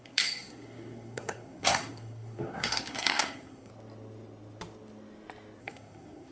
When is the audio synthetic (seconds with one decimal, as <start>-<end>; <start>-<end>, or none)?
0.0-3.7; 5.6-6.3